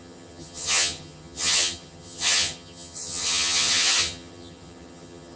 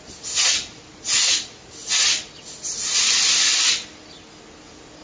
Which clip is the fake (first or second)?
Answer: first